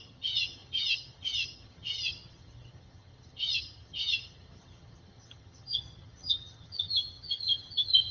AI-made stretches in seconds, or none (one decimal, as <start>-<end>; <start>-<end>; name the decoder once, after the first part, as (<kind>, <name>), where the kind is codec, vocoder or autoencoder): 0.0-8.1 (vocoder, HiFi-GAN)